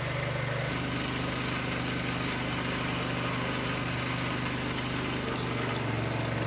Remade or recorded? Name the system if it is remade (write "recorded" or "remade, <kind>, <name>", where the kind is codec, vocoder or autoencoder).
recorded